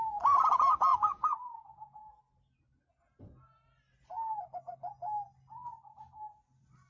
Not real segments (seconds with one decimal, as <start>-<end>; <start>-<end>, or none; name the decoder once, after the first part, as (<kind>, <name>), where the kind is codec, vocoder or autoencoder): 0.9-2.2 (vocoder, Vocos)